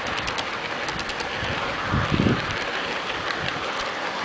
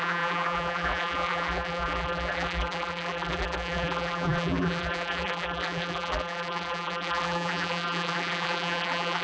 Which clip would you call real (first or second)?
first